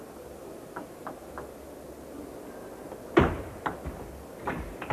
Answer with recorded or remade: recorded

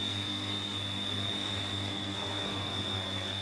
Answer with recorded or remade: remade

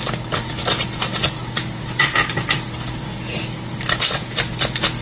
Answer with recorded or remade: recorded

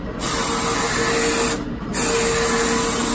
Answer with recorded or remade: recorded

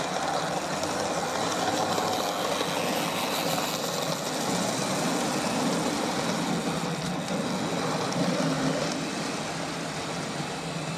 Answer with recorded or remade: recorded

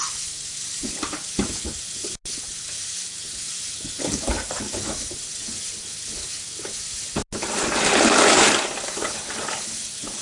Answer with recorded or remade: recorded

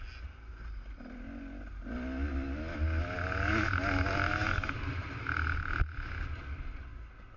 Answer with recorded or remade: recorded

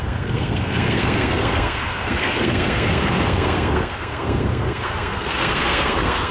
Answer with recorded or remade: remade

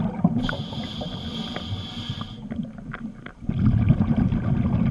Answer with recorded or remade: recorded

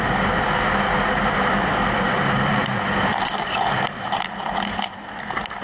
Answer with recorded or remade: recorded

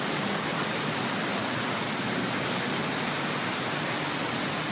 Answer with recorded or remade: recorded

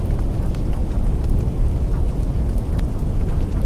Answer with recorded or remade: recorded